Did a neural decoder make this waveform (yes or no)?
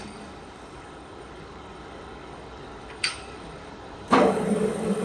yes